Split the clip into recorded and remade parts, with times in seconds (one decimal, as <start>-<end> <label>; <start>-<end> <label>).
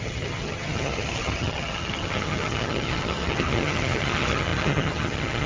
0.0-5.5 remade